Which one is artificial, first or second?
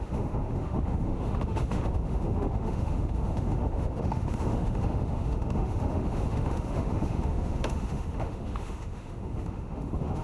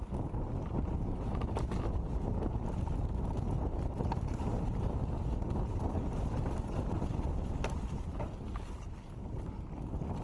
first